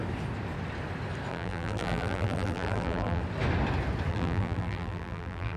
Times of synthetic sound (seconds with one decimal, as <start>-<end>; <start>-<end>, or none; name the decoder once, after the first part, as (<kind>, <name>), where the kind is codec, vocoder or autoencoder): 1.3-3.2 (vocoder, BigVGAN v2); 4.1-5.6